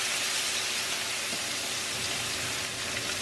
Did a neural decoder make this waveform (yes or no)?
no